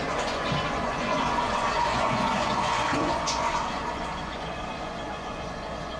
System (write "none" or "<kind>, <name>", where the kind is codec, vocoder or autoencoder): vocoder, Vocos